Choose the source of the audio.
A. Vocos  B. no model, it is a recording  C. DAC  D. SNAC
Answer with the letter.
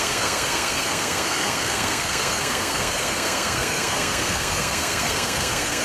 D